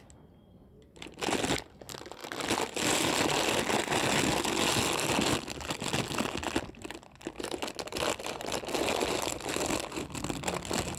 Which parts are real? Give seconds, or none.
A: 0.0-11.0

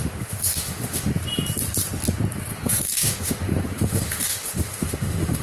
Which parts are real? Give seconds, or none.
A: 1.1-2.5

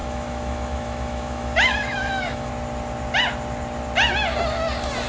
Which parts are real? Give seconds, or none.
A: 2.5-5.1

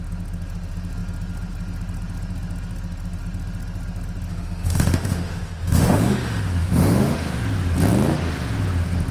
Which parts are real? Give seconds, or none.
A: 0.0-4.3; 7.4-9.1

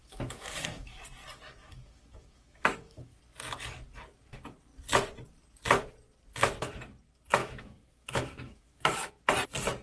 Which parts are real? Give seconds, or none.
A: 1.0-1.6; 3.2-7.4; 9.1-9.8

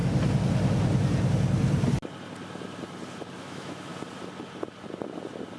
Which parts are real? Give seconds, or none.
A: 0.0-3.4; 3.9-5.6

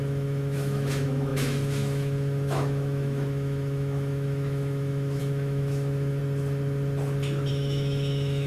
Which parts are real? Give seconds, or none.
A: 6.2-7.5